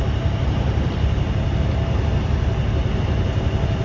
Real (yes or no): yes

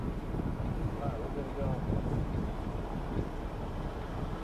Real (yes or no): yes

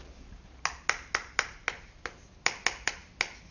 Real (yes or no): yes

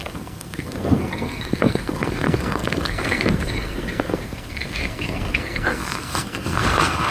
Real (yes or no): no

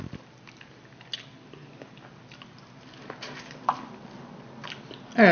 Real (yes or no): yes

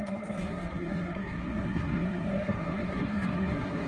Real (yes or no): no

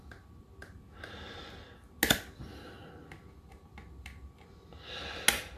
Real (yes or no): yes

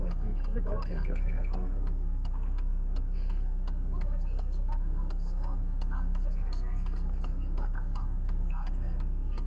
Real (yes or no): no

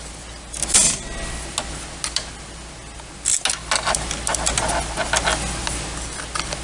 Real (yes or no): yes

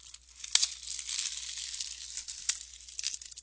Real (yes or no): yes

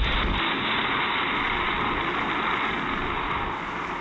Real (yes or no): yes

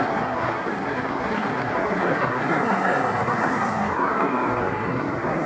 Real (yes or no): no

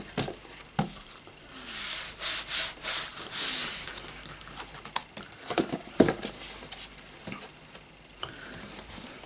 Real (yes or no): yes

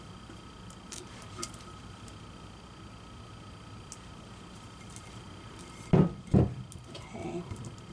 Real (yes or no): yes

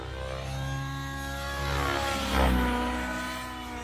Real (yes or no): yes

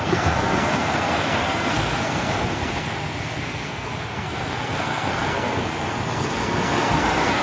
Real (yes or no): no